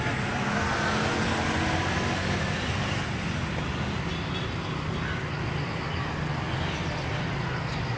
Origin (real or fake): real